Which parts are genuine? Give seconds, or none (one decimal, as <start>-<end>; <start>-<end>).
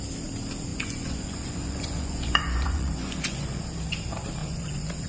0.0-0.7; 3.6-4.4